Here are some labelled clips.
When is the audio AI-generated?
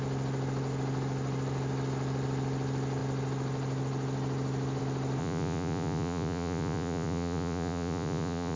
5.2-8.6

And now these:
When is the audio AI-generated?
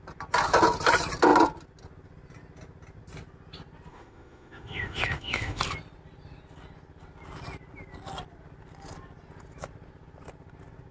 3.9-5.6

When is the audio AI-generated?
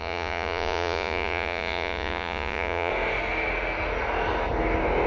0.0-2.9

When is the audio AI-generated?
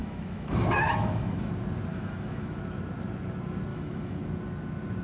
0.0-1.5; 1.9-2.6; 3.7-4.2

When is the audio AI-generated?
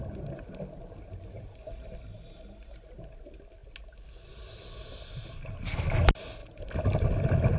none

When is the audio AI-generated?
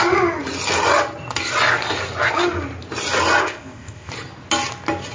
3.4-4.1